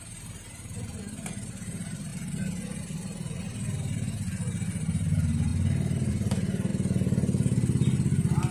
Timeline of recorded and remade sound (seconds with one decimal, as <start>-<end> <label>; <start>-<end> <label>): 0.0-5.5 remade; 5.5-6.1 recorded; 6.1-6.7 remade; 6.7-8.5 recorded